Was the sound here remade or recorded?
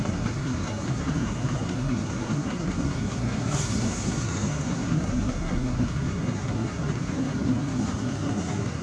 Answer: remade